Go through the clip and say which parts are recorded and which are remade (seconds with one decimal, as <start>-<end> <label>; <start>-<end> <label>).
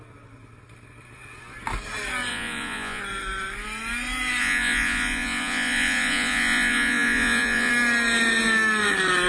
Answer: 0.0-2.3 recorded; 2.3-3.0 remade; 3.0-4.4 recorded; 4.4-7.7 remade; 7.7-9.3 recorded